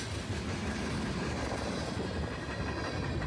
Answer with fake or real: real